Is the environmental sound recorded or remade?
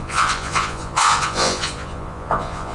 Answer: remade